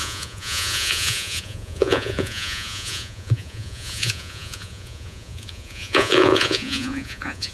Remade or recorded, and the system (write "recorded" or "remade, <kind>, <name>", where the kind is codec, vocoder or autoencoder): remade, vocoder, Vocos